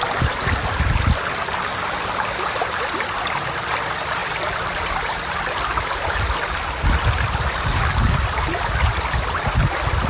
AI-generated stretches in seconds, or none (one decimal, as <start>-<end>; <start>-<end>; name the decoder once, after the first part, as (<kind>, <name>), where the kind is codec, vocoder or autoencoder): none